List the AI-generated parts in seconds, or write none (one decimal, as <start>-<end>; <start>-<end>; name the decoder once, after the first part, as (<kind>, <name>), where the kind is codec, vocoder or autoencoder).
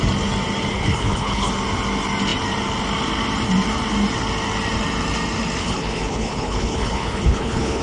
0.7-1.5 (codec, HILCodec); 5.6-7.8